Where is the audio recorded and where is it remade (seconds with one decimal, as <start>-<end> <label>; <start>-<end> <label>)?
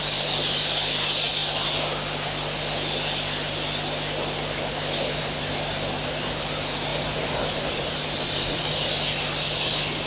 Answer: 0.0-6.9 recorded; 6.9-8.6 remade; 8.6-10.1 recorded